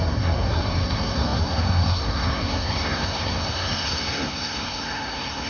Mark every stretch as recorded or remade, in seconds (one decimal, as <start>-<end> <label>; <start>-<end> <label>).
0.0-5.5 remade